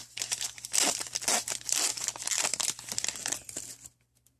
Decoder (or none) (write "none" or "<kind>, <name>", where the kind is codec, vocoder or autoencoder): vocoder, BigVGAN v2